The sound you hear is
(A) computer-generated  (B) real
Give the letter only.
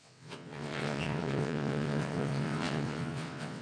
A